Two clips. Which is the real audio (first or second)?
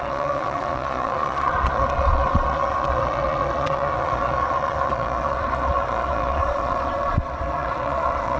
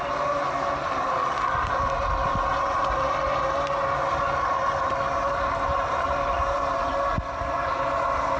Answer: second